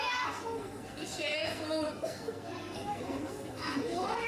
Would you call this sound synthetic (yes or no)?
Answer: yes